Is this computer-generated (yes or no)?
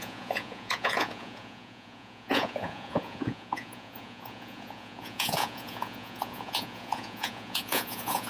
yes